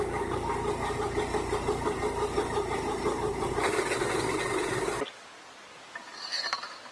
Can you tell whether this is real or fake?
real